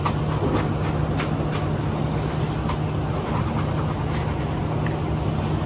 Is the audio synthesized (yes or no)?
no